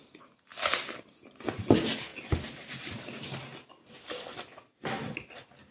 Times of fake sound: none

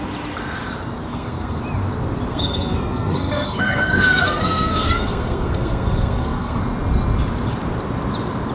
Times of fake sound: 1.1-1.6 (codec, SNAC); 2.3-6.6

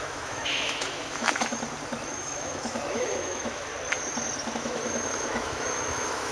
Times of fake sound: 0.0-1.5 (autoencoder, DAC-VAE); 2.1-3.7; 4.5-6.3

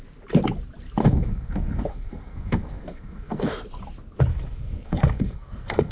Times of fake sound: 1.0-3.5 (codec, SNAC); 4.3-5.9